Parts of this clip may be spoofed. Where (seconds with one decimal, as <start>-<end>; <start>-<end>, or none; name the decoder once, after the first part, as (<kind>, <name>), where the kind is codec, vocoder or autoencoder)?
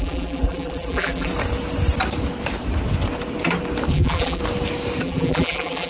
0.0-1.3 (vocoder, BigVGAN v2); 3.9-4.4; 5.0-5.9